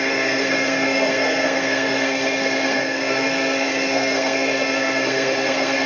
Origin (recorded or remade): remade